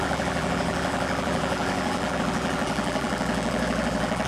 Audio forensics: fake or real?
fake